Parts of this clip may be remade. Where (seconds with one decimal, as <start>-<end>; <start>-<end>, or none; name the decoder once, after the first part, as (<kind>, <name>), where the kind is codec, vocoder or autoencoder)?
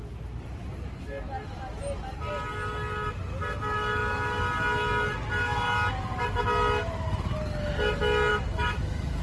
8.3-9.2 (autoencoder, DAC-VAE)